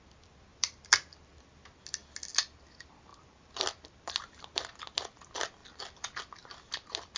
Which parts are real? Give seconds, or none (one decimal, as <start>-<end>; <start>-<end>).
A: 0.0-0.5; 1.4-3.1; 3.9-5.6; 6.2-7.2